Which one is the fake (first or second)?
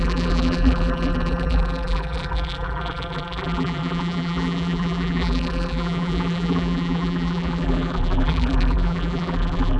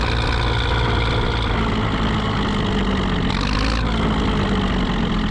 first